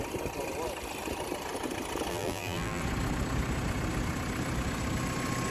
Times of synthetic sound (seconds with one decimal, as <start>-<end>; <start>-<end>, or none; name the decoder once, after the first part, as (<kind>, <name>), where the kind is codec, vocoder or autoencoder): 2.1-2.8 (vocoder, BigVGAN v2)